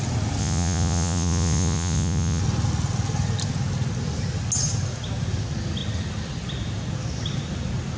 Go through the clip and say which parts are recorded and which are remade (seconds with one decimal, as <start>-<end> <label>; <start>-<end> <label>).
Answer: 0.0-0.4 recorded; 0.4-2.4 remade; 2.4-8.0 recorded